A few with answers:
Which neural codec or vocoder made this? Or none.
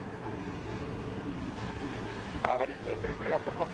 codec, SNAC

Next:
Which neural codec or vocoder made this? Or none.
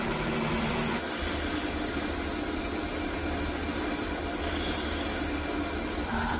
none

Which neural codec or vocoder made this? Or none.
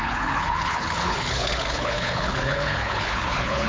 codec, HILCodec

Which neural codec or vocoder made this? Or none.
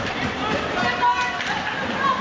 none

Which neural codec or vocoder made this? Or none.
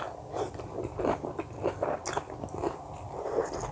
none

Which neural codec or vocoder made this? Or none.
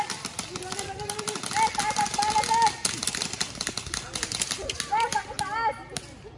none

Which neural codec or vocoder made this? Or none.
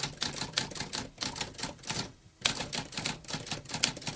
none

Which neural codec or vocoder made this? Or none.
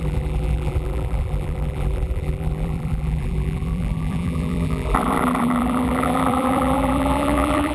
vocoder, BigVGAN v2